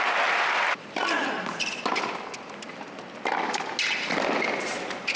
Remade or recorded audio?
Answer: recorded